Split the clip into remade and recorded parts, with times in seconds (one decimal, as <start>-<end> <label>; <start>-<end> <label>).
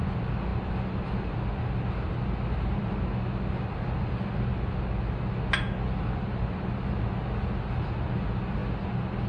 0.0-9.3 recorded